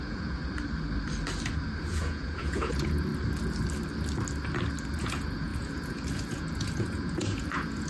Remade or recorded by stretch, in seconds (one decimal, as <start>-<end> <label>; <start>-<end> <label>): 0.0-0.4 remade; 0.4-1.9 recorded; 1.9-3.1 remade; 3.1-5.0 recorded; 5.0-7.9 remade